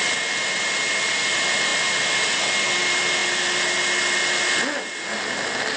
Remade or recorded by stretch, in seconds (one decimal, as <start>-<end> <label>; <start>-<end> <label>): 0.0-5.8 recorded